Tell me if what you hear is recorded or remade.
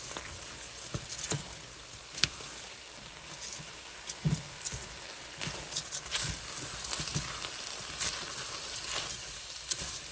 recorded